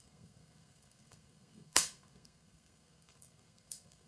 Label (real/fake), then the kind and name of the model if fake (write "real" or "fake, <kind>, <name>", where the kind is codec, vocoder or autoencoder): fake, codec, SNAC